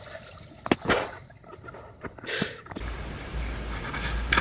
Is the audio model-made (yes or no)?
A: no